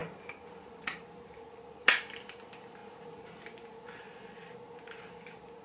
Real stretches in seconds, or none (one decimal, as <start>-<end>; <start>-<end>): 0.0-5.6